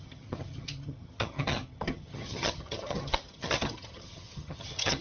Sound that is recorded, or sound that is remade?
remade